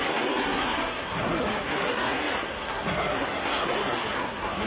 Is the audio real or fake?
fake